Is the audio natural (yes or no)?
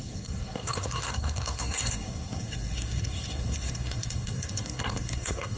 no